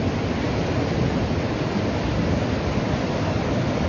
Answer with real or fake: fake